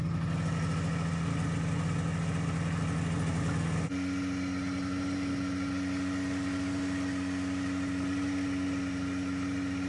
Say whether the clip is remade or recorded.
recorded